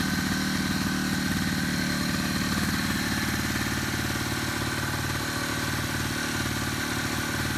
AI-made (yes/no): no